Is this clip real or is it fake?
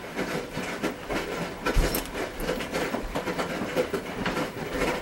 fake